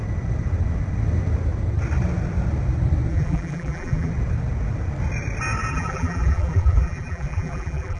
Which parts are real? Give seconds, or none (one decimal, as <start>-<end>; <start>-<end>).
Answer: 0.0-3.1; 4.1-5.7